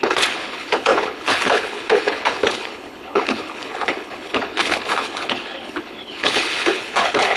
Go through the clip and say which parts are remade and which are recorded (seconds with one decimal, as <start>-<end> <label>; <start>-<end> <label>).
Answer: 0.0-7.4 remade